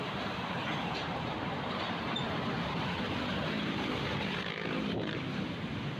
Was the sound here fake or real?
fake